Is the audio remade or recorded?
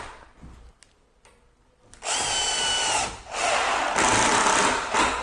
recorded